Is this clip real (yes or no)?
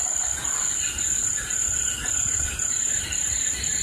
yes